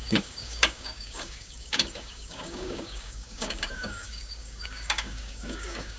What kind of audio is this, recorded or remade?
remade